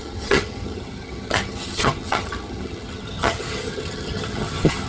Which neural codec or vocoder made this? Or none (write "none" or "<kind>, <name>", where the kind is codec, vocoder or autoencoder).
vocoder, HiFi-GAN